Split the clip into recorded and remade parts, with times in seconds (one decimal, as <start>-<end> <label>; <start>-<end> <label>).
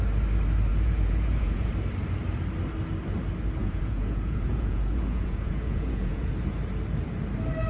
0.0-0.7 recorded; 0.7-1.7 remade; 1.7-3.6 recorded; 3.6-6.3 remade; 6.3-7.7 recorded